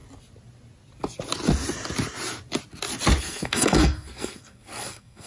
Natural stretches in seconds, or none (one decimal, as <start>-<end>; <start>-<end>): 0.0-3.2